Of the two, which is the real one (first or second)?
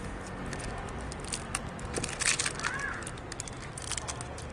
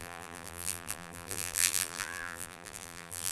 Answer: first